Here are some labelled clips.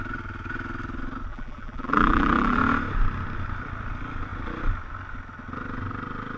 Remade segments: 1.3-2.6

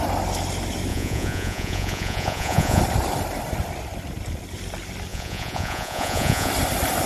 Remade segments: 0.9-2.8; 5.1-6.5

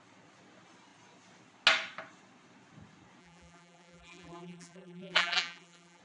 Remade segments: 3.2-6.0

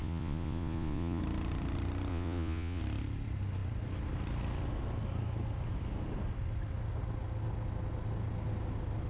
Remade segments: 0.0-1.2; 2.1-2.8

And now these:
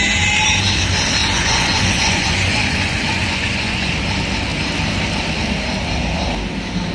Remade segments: 1.2-3.9